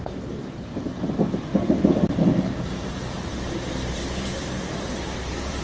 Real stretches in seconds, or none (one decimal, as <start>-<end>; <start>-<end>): 1.5-2.4